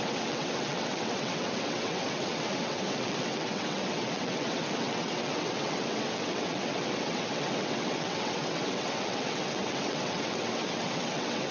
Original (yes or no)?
no